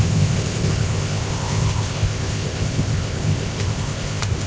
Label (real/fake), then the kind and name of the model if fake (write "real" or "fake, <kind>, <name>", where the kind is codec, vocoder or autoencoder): fake, codec, ZipCodec